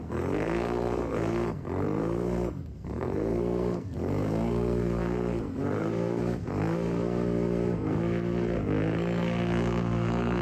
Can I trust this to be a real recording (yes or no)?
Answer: no